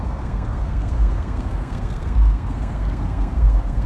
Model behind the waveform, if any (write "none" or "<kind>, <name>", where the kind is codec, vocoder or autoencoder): codec, SNAC